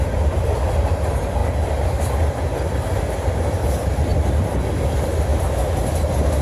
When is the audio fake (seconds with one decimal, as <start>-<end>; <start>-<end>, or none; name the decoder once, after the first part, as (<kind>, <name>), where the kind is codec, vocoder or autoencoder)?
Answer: 1.4-3.0 (vocoder, BigVGAN v2); 4.1-4.7; 5.3-6.4